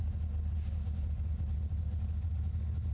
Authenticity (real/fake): real